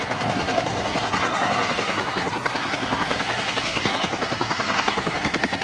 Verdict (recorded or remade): remade